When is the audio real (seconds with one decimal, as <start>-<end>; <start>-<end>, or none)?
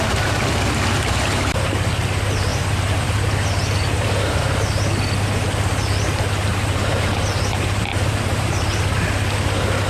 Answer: 0.0-2.5; 4.4-6.5; 8.8-9.9